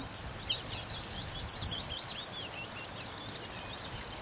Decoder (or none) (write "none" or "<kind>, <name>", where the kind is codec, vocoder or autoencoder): none